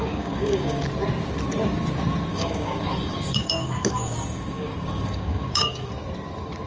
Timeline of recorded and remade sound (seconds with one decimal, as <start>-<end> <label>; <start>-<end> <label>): 0.0-0.8 remade; 0.8-2.3 recorded; 2.3-5.9 remade; 5.9-6.7 recorded